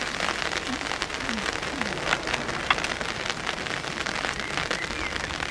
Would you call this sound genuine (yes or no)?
yes